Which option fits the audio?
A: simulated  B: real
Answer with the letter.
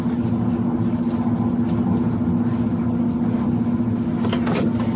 B